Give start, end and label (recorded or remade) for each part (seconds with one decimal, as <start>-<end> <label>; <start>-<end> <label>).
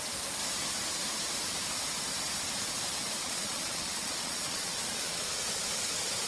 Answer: 0.0-3.2 recorded; 3.2-5.4 remade; 5.4-6.3 recorded